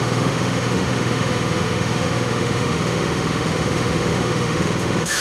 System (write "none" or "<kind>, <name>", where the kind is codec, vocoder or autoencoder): autoencoder, DAC-VAE